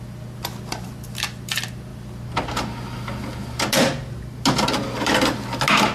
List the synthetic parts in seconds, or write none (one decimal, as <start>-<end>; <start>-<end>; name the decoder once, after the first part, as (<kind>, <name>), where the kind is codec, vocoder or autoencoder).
none